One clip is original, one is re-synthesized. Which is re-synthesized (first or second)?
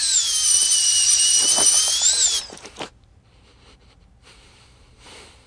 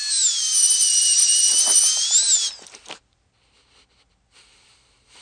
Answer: first